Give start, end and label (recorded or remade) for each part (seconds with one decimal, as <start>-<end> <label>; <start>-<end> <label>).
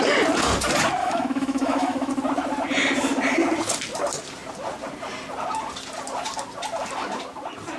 0.0-1.0 recorded; 1.0-2.1 remade; 2.1-7.8 recorded